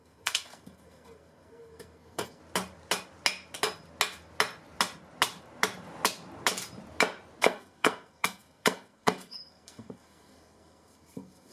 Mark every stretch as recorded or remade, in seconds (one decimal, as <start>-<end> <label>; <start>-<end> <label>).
0.0-2.4 remade; 2.4-7.4 recorded; 7.4-11.5 remade